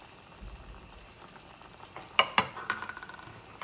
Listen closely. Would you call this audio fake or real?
real